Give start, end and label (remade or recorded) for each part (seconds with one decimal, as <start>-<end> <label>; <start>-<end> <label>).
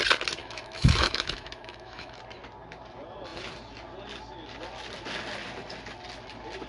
0.0-0.4 recorded; 0.4-2.2 remade; 2.2-6.7 recorded